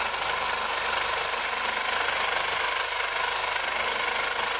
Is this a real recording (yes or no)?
yes